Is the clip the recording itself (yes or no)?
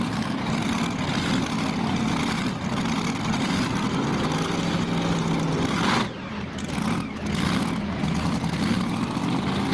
yes